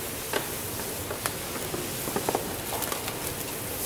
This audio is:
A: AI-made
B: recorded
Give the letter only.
B